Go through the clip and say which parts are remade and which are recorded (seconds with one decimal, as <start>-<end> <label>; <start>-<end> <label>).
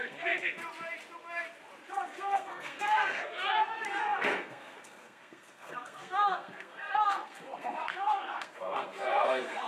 0.0-0.6 remade; 0.6-1.9 recorded; 1.9-9.7 remade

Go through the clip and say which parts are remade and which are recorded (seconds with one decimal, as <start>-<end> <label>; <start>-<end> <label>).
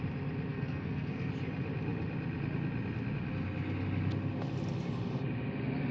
0.0-0.5 recorded; 0.5-1.3 remade; 1.3-5.9 recorded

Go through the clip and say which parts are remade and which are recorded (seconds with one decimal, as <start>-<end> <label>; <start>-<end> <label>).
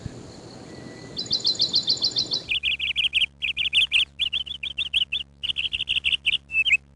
0.0-7.0 recorded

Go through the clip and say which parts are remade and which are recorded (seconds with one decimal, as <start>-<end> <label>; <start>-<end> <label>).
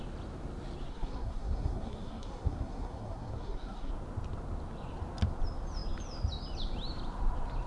0.0-0.9 recorded; 0.9-3.9 remade; 3.9-7.7 recorded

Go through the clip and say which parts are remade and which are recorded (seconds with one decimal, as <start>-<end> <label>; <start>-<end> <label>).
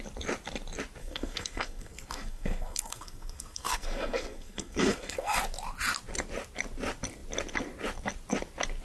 0.0-1.0 recorded; 1.0-5.4 remade; 5.4-8.8 recorded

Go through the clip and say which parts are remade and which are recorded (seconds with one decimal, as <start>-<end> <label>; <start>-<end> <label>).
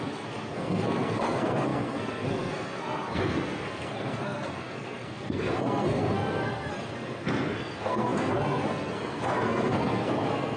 0.0-10.6 remade